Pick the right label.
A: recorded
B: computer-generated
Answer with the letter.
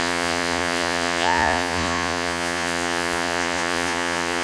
B